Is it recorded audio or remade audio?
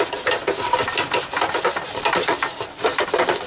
recorded